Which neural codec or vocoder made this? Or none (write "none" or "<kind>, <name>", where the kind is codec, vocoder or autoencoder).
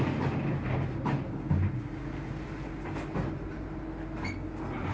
none